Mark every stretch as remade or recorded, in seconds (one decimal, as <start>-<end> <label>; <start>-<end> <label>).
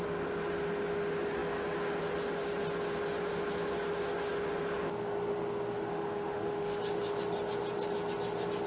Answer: 0.0-5.9 recorded; 5.9-6.8 remade; 6.8-8.7 recorded